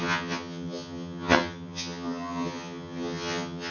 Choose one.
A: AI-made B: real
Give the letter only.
A